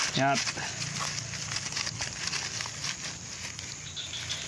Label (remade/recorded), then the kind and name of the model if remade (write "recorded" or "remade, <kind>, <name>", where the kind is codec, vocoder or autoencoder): recorded